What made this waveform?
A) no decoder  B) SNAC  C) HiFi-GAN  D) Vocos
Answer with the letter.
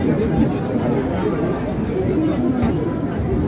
A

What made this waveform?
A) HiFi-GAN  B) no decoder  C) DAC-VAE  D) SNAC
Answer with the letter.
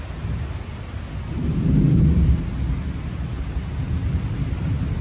B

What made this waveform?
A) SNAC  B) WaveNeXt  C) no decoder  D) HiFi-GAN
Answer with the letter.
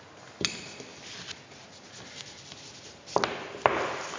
C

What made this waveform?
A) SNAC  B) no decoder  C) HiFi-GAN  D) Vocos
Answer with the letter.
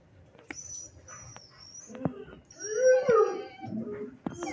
B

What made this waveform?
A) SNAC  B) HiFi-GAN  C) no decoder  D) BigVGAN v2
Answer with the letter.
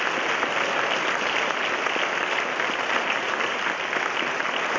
C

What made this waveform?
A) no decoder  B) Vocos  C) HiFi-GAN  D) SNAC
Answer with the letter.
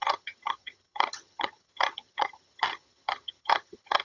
C